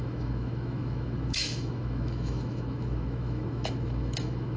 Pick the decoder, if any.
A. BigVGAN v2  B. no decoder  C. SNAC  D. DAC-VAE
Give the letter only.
D